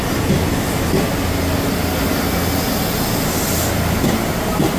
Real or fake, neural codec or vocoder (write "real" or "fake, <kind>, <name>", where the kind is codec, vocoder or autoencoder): real